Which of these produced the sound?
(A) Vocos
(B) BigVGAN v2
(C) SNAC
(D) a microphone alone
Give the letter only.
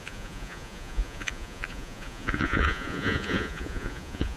A